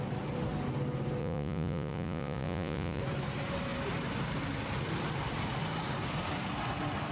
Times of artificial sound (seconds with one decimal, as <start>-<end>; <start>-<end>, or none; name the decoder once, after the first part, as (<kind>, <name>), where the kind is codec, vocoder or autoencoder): 1.2-3.0 (vocoder, Vocos)